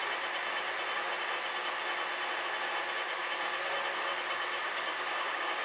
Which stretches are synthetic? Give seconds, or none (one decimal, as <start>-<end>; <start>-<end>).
4.6-5.6